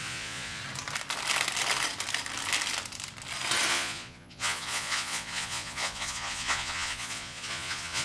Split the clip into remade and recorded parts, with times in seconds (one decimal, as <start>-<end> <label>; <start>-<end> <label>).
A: 0.0-0.6 remade; 0.6-3.7 recorded; 3.7-8.0 remade